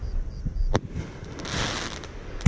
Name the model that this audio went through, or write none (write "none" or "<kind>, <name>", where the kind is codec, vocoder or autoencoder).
none